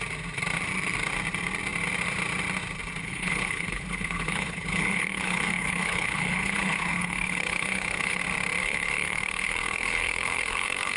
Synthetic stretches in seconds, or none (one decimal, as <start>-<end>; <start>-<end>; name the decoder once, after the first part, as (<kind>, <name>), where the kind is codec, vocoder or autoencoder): 3.0-8.2 (codec, HILCodec); 8.6-11.0